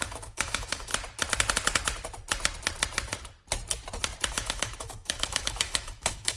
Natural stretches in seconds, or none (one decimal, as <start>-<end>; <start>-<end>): 0.9-4.3